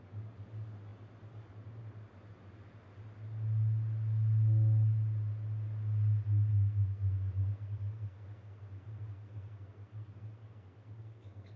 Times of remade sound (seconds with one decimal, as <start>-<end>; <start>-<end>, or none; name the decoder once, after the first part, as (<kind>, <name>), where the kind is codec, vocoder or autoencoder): 6.5-11.6 (codec, SNAC)